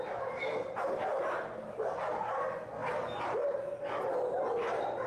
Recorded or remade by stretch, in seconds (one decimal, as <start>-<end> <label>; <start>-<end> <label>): 0.0-5.1 recorded